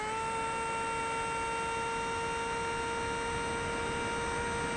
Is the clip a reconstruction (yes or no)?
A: no